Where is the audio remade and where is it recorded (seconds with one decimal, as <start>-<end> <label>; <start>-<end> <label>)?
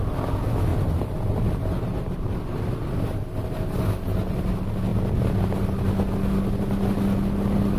0.0-0.7 recorded; 0.7-2.4 remade; 2.4-7.8 recorded